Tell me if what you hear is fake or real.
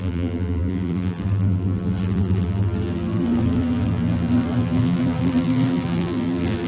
fake